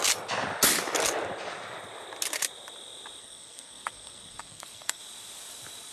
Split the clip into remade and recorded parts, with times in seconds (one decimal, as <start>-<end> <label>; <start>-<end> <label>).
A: 0.0-3.2 recorded; 3.2-5.0 remade; 5.0-5.9 recorded